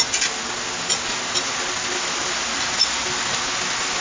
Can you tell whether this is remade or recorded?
recorded